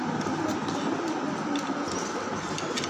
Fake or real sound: real